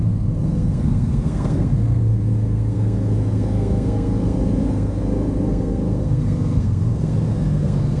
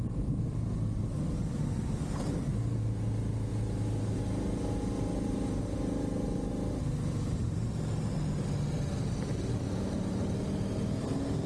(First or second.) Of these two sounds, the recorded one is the second